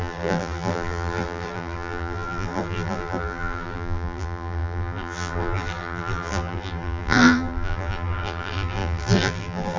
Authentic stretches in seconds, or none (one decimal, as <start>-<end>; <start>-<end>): none